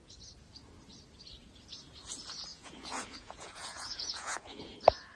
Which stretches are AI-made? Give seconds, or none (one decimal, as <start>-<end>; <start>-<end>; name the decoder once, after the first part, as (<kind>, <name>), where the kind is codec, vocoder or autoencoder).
2.5-4.8 (vocoder, Vocos)